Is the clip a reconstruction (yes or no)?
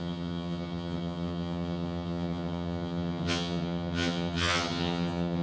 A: yes